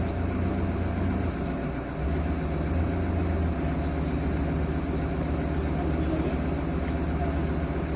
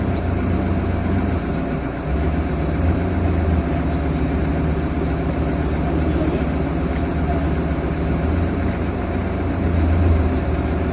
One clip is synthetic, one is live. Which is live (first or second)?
first